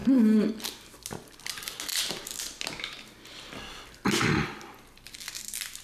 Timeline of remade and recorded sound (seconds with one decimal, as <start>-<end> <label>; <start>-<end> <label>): 0.0-5.8 recorded